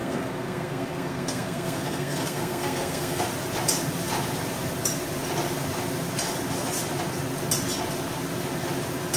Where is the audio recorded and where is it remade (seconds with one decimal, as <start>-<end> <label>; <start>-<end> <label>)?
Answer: 0.0-3.2 remade; 3.2-9.2 recorded